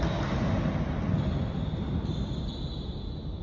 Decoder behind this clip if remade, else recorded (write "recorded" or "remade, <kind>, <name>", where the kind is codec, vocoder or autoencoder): recorded